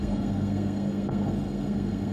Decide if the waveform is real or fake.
fake